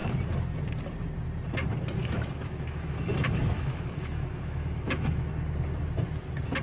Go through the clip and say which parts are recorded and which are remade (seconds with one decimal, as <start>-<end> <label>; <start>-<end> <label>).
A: 0.0-2.0 recorded; 2.0-5.3 remade; 5.3-6.6 recorded